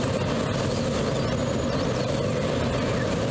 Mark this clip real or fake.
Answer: real